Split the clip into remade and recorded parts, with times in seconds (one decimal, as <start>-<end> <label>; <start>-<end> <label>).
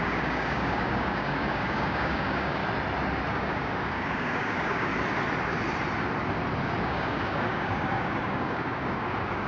0.0-2.6 remade; 2.6-3.3 recorded; 3.3-4.9 remade; 4.9-6.8 recorded; 6.8-9.5 remade